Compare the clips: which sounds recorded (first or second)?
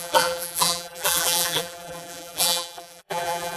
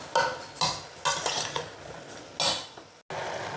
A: second